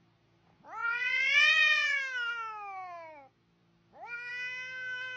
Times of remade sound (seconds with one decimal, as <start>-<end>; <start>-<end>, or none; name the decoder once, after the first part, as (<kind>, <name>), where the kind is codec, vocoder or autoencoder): 0.8-2.0 (vocoder, Vocos)